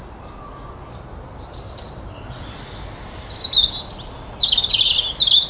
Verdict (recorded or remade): recorded